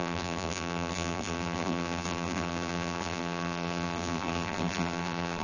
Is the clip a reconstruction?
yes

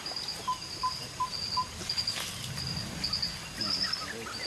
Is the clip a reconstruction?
no